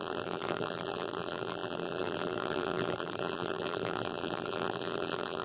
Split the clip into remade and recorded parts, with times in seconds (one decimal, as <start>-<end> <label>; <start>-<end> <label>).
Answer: 0.0-5.4 remade